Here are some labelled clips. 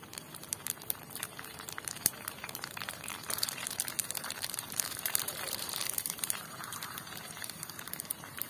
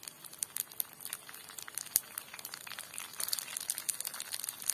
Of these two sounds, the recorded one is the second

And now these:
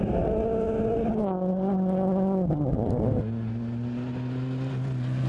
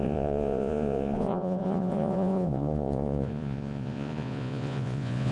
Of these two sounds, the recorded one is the first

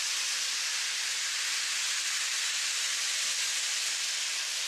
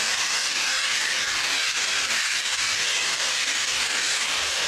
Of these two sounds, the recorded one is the first